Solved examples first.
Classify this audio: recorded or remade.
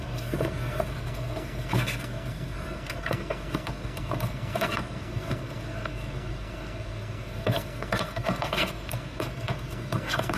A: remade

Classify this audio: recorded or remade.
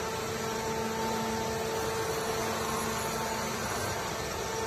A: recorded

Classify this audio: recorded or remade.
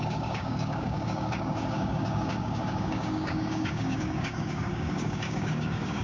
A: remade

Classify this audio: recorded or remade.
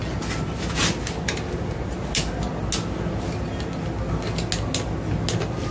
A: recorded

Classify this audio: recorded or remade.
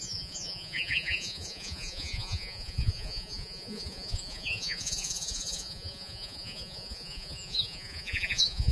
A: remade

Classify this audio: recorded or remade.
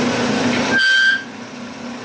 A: recorded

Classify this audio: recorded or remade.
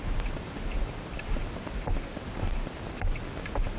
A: recorded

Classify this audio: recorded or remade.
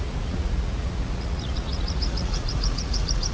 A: remade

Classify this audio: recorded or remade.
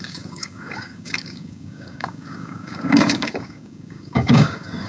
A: remade